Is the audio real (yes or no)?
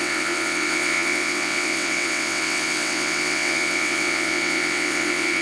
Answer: no